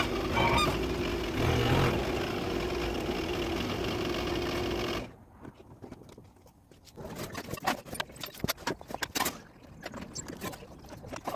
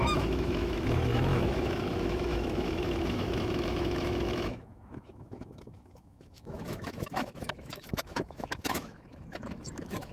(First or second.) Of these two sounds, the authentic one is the first